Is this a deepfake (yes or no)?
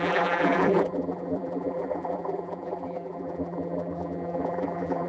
yes